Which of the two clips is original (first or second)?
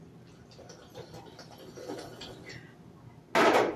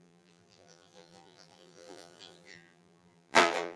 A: first